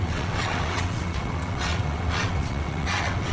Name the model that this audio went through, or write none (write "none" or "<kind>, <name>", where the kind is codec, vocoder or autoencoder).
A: vocoder, WaveNeXt